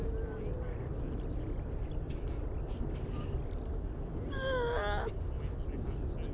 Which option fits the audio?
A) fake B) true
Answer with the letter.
B